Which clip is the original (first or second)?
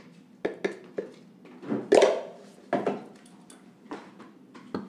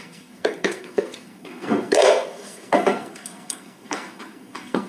first